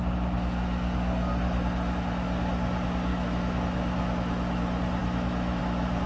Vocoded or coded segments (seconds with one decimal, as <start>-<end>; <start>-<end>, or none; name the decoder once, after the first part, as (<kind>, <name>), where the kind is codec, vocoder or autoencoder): 3.1-4.6 (autoencoder, DAC-VAE); 5.0-5.6